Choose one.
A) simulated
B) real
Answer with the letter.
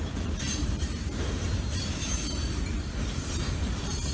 A